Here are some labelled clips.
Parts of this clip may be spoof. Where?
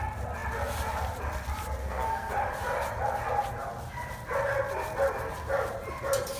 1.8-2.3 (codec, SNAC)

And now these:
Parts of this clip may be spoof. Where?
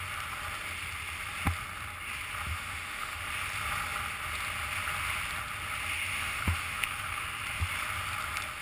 2.5-3.2 (autoencoder, DAC-VAE); 6.1-7.2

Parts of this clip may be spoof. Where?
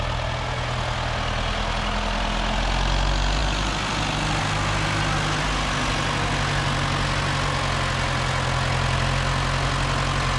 none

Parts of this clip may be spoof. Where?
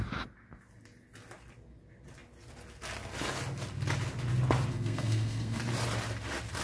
4.7-5.6 (codec, SNAC)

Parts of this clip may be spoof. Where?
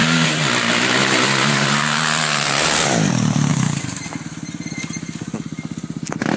none